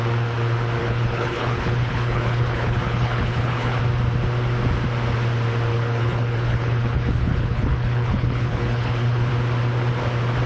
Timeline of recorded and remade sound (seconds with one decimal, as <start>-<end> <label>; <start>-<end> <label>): 0.0-0.8 recorded; 0.8-3.8 remade; 3.8-5.7 recorded; 5.7-9.3 remade; 9.3-10.5 recorded